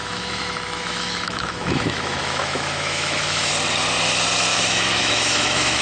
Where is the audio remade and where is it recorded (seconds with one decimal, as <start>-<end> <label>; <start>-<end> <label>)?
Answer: 0.0-3.5 remade; 3.5-4.5 recorded; 4.5-5.8 remade